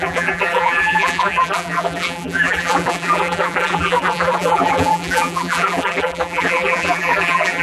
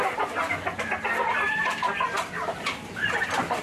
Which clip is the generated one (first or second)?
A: first